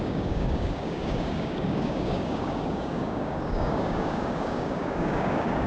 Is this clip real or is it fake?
fake